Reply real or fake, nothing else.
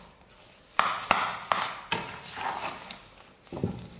real